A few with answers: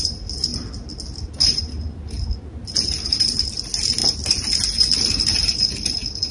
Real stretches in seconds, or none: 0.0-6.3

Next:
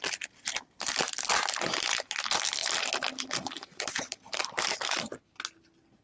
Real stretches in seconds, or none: 0.0-6.0

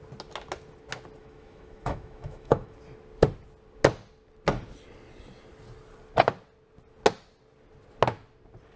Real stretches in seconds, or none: 0.0-1.2; 2.8-8.8